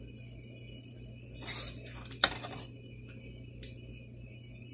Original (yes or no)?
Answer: yes